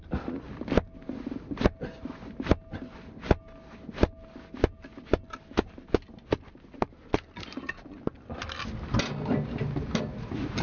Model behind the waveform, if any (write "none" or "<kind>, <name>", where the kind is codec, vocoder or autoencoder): none